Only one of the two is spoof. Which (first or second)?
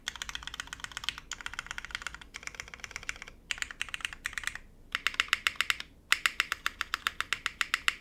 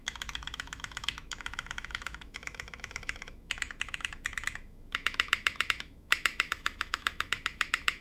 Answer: second